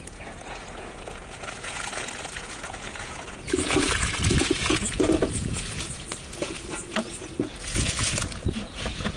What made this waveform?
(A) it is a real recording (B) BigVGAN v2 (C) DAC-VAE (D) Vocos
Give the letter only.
D